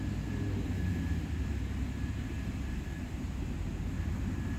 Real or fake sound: real